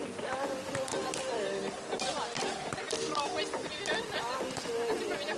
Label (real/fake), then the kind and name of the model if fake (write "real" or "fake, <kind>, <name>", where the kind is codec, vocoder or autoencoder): real